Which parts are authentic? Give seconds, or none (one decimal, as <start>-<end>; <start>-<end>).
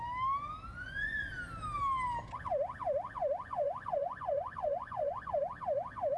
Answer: 0.0-0.7; 1.3-3.5; 5.4-6.2